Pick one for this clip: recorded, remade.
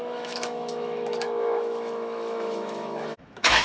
remade